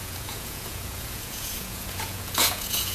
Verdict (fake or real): fake